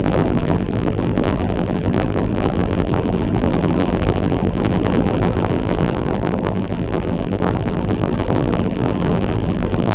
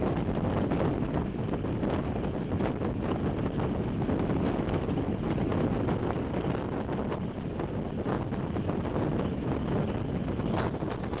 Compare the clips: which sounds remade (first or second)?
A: first